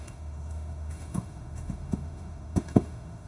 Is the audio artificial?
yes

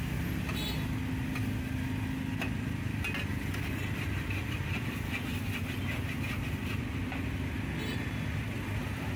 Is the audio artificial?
no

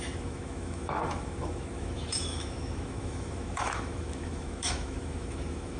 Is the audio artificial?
yes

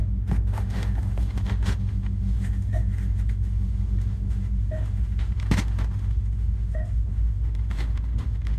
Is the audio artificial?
yes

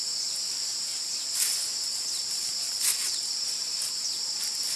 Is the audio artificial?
no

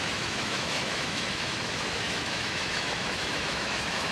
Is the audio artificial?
yes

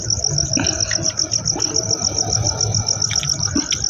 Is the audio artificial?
no